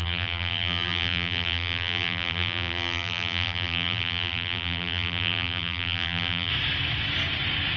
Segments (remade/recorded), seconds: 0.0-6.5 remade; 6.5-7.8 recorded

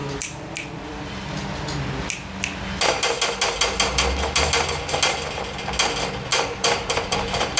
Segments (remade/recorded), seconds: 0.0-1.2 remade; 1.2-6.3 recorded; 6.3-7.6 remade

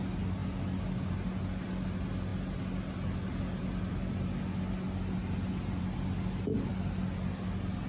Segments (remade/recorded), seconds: 0.0-7.9 recorded